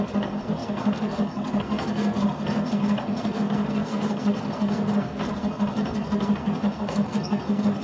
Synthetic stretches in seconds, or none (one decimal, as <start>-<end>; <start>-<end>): 0.0-7.8